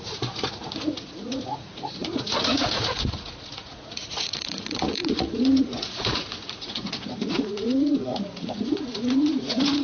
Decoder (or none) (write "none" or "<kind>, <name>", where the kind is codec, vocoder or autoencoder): vocoder, Vocos